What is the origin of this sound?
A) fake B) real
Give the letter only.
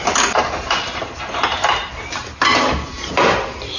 B